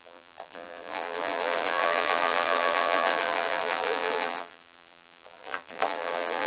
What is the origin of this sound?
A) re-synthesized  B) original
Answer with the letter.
A